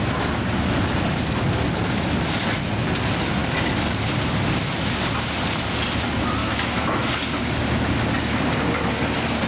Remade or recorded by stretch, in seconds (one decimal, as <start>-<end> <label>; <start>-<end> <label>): 0.0-6.4 recorded; 6.4-7.2 remade; 7.2-9.5 recorded